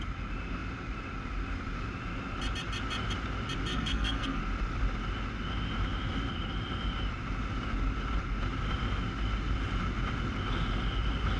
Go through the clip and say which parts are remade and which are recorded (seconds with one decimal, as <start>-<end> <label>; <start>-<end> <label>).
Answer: 0.0-3.7 recorded; 3.7-4.4 remade; 4.4-11.4 recorded